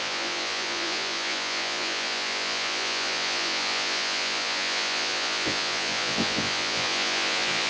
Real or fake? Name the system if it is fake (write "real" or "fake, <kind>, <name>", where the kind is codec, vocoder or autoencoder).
fake, vocoder, Vocos